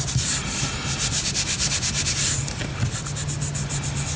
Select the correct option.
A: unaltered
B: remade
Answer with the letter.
A